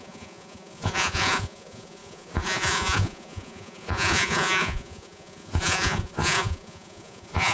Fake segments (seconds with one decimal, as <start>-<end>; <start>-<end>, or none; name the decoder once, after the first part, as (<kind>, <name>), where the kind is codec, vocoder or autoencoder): 0.0-7.5 (vocoder, Vocos)